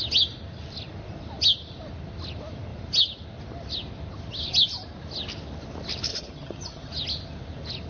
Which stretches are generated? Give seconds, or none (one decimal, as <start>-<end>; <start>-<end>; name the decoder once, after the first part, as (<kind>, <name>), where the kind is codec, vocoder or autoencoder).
6.1-6.9 (vocoder, HiFi-GAN)